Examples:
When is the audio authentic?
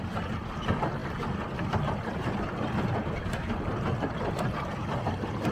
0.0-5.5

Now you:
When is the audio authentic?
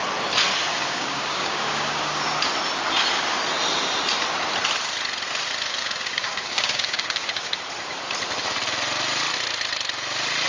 0.0-0.7; 2.2-5.8; 7.6-10.5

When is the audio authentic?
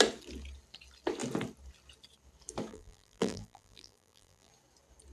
0.0-2.7; 4.5-5.1